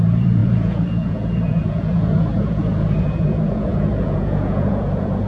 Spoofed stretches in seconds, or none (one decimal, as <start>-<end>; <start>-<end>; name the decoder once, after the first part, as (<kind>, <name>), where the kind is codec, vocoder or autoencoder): 0.0-5.3 (vocoder, Vocos)